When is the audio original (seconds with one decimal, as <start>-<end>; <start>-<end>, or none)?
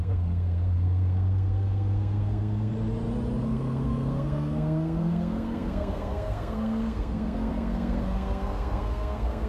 2.7-3.4